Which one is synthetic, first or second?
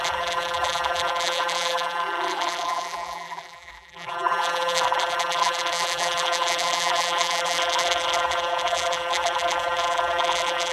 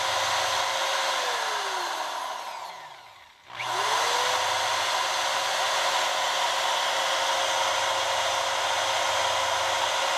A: first